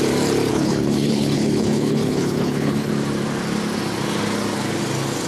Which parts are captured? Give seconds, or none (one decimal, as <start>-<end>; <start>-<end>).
0.0-0.5; 2.9-5.3